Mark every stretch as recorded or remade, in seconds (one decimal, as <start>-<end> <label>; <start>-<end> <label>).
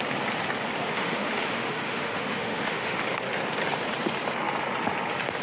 0.0-0.9 recorded; 0.9-3.0 remade; 3.0-5.4 recorded